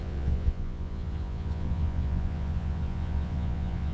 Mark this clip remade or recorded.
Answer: remade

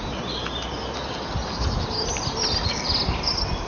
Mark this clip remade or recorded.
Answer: recorded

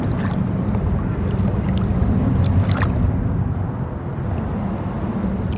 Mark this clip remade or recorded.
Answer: recorded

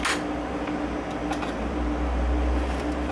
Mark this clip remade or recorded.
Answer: recorded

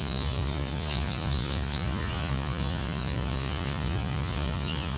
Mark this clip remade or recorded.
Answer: remade